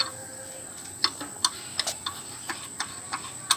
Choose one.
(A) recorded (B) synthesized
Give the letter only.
A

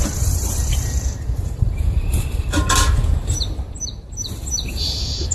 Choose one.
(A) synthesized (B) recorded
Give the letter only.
A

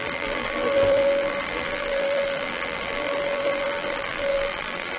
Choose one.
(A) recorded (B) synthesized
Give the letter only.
B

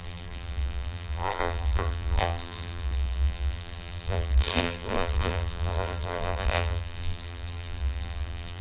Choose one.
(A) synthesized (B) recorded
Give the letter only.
A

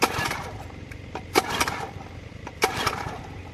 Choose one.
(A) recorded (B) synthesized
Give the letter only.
B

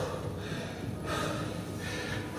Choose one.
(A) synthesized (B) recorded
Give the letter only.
B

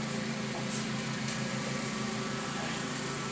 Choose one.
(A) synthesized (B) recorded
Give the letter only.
A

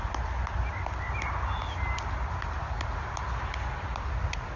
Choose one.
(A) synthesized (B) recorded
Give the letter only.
B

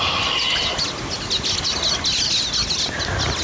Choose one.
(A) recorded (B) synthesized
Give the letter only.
A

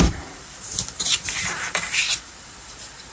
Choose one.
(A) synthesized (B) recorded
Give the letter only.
A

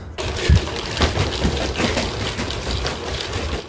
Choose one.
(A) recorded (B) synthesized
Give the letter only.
A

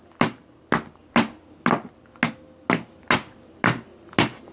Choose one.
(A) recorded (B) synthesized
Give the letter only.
A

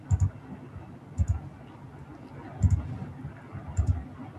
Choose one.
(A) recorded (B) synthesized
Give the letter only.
A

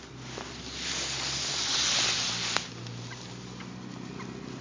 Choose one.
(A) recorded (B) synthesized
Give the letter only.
A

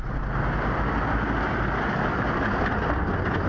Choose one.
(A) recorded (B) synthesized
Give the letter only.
A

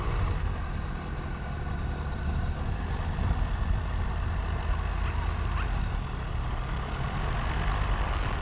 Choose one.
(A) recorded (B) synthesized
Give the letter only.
A